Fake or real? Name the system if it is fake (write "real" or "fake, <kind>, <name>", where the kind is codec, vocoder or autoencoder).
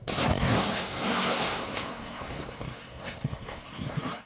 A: fake, codec, SNAC